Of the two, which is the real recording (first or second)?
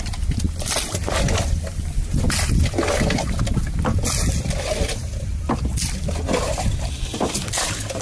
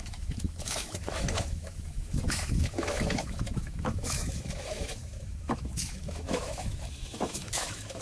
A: first